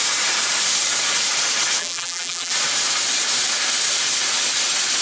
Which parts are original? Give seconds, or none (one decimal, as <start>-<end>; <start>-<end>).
0.0-1.8; 2.5-5.0